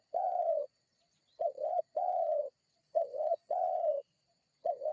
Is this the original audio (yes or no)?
no